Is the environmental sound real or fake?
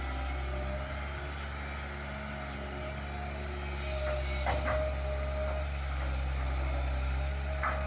real